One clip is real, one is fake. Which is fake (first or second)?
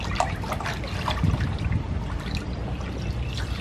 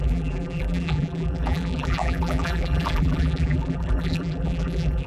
second